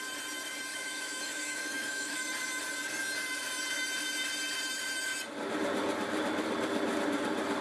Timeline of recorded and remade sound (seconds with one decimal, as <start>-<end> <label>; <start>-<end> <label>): 0.0-0.7 recorded; 0.7-2.3 remade; 2.3-7.6 recorded

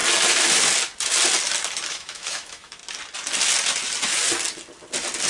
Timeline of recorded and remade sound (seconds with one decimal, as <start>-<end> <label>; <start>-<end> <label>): 0.0-1.9 recorded; 1.9-2.8 remade; 2.8-5.3 recorded

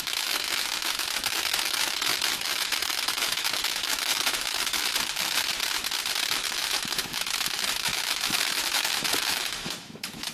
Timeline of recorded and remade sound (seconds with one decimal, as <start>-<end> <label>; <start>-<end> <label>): 0.0-5.5 remade; 5.5-6.3 recorded; 6.3-10.3 remade

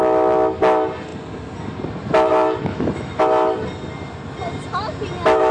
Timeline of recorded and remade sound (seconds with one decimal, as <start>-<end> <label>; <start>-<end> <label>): 0.0-2.7 recorded; 2.7-3.2 remade; 3.2-5.5 recorded

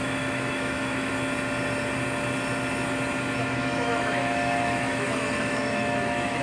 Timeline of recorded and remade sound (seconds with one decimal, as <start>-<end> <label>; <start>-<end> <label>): 0.0-1.1 remade; 1.1-3.4 recorded; 3.4-6.4 remade

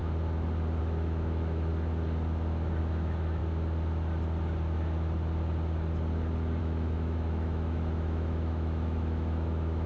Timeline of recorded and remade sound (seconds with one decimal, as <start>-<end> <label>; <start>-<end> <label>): 0.0-0.8 recorded; 0.8-1.7 remade; 1.7-2.8 recorded; 2.8-3.4 remade; 3.4-6.6 recorded; 6.6-9.9 remade

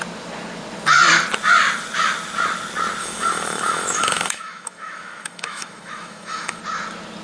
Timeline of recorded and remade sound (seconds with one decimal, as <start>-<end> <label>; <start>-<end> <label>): 0.0-3.0 recorded; 3.0-6.6 remade; 6.6-7.2 recorded